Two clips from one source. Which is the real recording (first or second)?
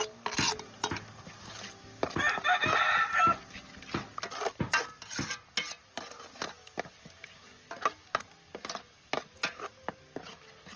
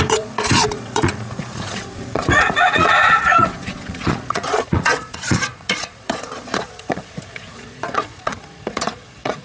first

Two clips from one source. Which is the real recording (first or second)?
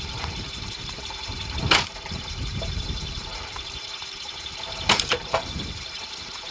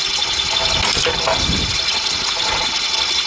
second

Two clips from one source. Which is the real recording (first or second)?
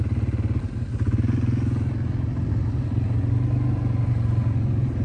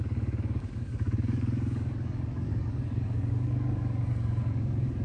first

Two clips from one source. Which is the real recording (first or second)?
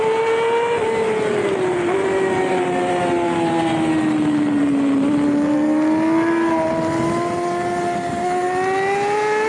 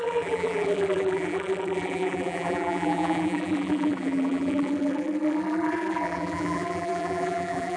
first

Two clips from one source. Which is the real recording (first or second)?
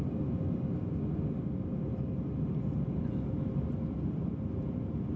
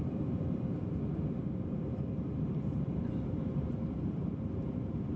first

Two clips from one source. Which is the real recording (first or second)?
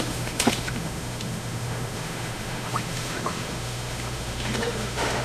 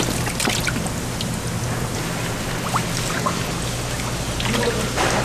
second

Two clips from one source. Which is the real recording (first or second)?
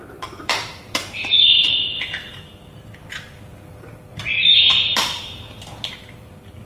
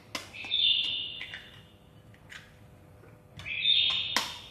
second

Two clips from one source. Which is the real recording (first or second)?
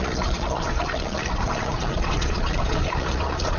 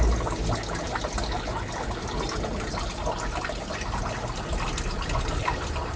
second